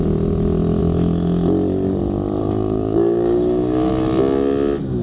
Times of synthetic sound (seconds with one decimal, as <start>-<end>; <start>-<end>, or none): 2.4-3.9